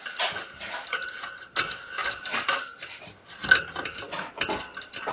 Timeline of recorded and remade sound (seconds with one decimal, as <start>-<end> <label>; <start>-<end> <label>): 0.0-2.0 recorded; 2.0-5.1 remade